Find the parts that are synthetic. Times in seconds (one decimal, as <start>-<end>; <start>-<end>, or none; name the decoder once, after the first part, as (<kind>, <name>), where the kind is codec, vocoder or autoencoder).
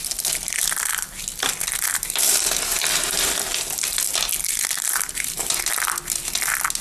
4.9-5.5 (vocoder, BigVGAN v2)